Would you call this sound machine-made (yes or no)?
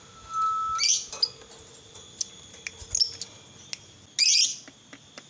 no